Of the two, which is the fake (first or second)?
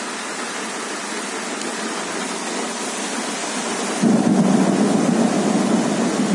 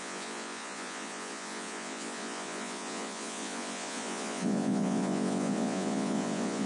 second